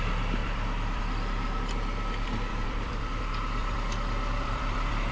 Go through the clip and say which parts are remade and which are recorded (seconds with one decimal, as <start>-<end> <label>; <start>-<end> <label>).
0.0-0.4 recorded; 0.4-1.0 remade; 1.0-2.5 recorded; 2.5-3.2 remade; 3.2-3.6 recorded; 3.6-5.1 remade